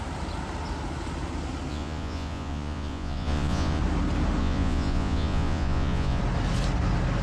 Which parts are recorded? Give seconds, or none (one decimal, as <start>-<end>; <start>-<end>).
0.0-1.7; 3.8-4.4; 6.2-7.2